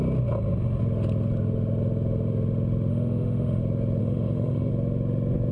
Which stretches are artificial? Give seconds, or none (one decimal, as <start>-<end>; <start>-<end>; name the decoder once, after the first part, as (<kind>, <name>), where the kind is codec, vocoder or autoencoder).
2.9-3.6 (autoencoder, DAC-VAE); 4.0-4.7